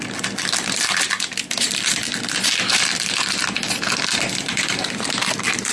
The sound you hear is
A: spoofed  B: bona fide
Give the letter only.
A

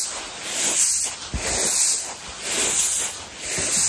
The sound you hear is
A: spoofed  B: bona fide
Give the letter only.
B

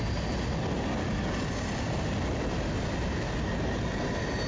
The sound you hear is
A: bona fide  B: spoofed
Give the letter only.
A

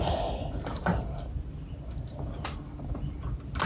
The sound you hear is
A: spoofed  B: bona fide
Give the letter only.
B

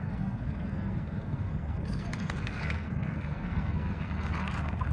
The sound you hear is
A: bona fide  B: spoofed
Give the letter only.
B